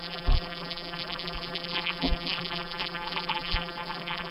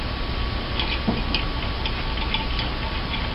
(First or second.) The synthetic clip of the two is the first